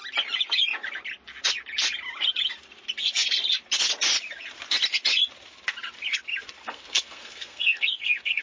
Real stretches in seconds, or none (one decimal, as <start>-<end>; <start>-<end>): 0.0-6.6